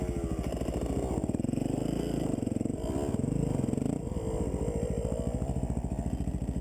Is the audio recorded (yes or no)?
yes